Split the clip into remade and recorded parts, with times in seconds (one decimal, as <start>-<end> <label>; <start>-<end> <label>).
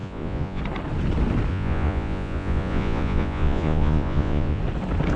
0.0-0.6 remade; 0.6-1.5 recorded; 1.5-4.6 remade; 4.6-5.2 recorded